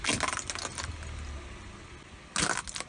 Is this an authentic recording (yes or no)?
yes